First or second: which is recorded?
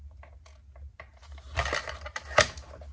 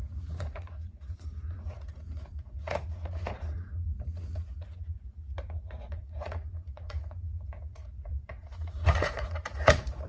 first